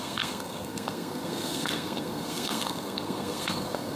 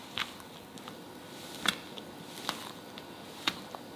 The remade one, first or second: first